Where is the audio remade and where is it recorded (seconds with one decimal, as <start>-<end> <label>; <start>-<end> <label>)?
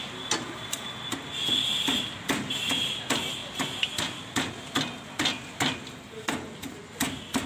0.0-7.5 recorded